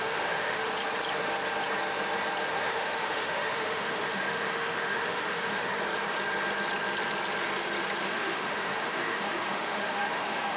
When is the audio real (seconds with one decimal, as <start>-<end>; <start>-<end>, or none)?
0.7-2.5; 5.7-8.0